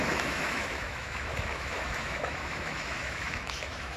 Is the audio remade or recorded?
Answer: remade